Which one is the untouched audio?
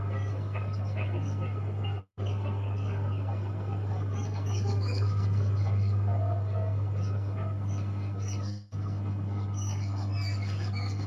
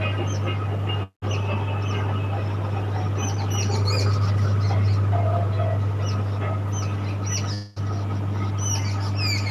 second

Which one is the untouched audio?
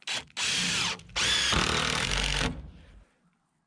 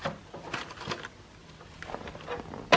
first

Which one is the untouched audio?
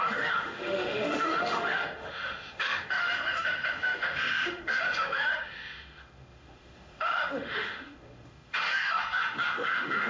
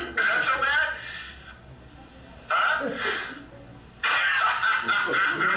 second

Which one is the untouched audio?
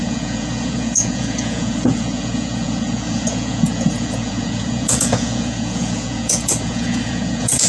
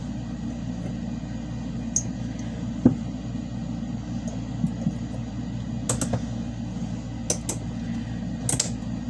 second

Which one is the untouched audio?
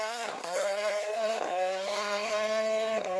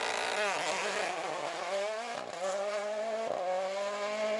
second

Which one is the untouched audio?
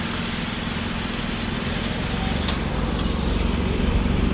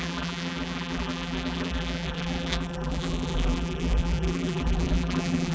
first